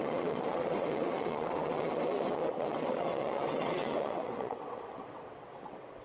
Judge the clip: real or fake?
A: fake